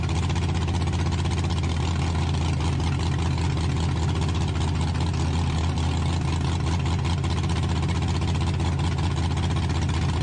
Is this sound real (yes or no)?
yes